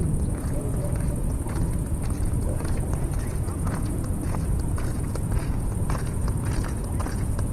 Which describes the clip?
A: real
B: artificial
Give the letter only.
B